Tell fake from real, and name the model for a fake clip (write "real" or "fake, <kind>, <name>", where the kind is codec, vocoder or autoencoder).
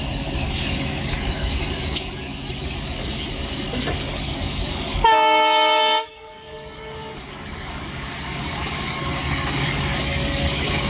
fake, codec, DAC